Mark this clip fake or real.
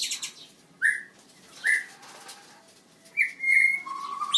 real